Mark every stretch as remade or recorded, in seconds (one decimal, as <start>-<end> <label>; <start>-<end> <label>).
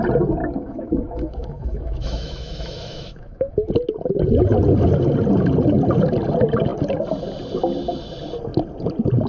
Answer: 0.0-0.4 recorded; 0.4-3.7 remade; 3.7-9.3 recorded